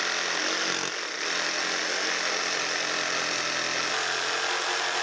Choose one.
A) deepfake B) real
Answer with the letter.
B